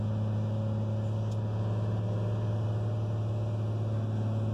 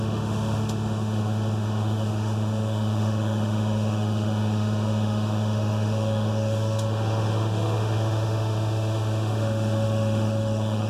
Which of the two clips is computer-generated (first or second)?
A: second